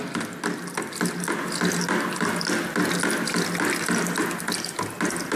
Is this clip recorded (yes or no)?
yes